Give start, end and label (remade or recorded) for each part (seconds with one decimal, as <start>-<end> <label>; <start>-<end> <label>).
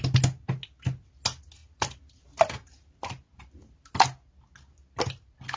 0.0-5.6 recorded